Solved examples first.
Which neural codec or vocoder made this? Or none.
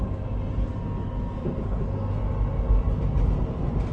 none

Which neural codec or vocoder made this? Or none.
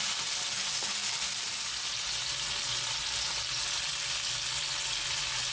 none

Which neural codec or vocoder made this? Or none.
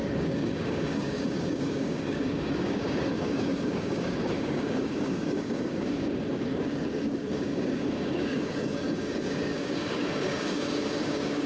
codec, DAC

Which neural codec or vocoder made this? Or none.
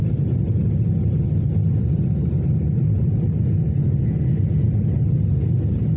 none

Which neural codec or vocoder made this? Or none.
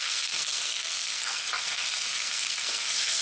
codec, SNAC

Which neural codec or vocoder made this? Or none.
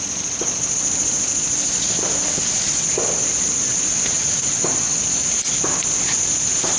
none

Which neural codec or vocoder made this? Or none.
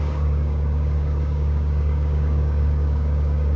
codec, DAC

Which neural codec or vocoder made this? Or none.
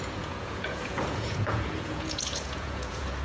vocoder, Vocos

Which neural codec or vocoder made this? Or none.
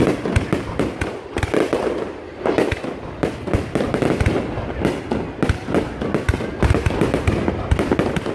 none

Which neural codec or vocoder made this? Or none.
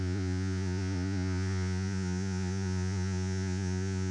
vocoder, Vocos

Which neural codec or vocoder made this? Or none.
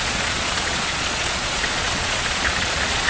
vocoder, Vocos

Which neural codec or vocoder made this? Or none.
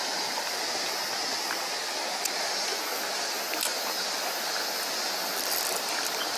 none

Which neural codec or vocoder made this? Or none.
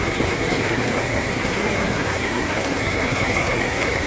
codec, SNAC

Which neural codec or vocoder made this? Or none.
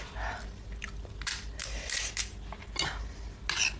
none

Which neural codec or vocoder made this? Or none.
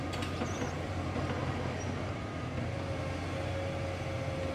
none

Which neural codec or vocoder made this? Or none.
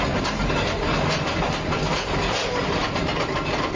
none